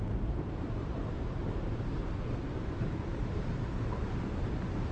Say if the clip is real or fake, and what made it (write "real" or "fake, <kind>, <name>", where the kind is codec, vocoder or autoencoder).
fake, vocoder, BigVGAN v2